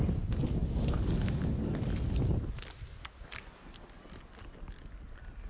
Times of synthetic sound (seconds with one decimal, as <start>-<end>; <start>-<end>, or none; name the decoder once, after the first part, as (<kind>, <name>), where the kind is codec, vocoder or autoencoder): none